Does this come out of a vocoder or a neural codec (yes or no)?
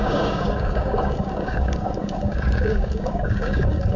yes